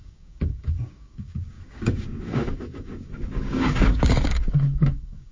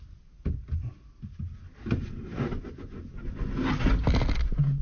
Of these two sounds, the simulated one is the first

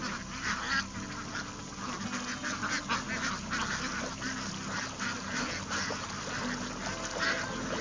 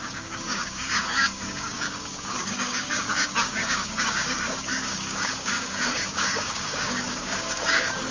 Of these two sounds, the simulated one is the second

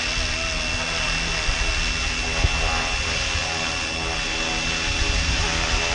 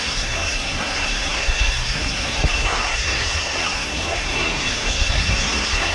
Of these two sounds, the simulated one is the second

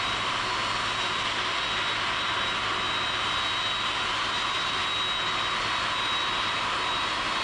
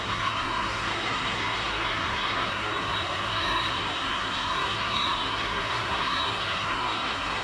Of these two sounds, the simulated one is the second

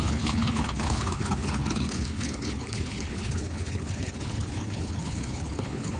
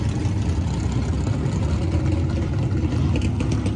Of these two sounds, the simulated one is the first